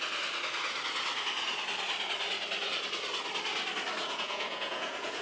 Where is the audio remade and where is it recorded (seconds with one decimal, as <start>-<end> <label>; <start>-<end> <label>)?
0.0-4.0 recorded; 4.0-5.2 remade